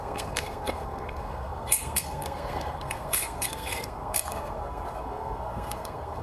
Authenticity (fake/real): fake